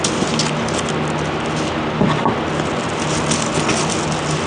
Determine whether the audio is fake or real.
real